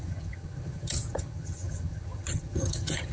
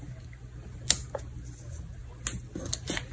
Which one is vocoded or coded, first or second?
first